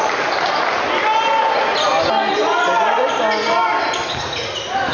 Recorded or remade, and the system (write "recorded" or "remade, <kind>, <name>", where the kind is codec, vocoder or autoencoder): recorded